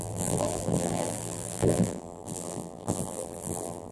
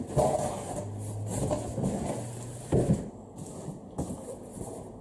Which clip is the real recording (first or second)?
second